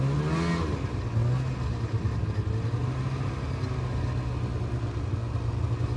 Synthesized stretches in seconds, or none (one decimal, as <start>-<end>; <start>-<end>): none